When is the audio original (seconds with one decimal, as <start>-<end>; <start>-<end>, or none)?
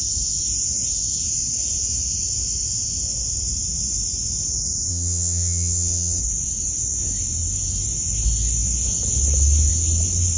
0.0-4.9; 6.2-10.4